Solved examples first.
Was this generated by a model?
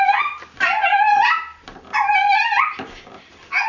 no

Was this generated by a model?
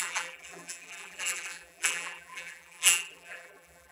yes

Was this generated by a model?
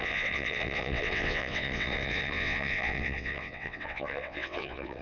yes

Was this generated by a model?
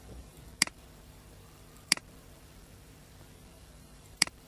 yes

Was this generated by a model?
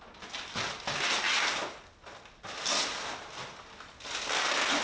no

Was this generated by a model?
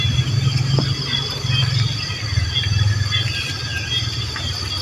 no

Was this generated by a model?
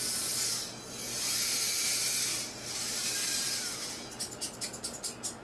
no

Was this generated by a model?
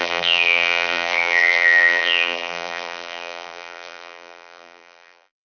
yes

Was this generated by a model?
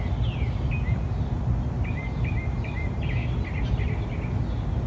no